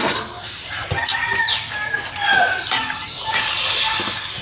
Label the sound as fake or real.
real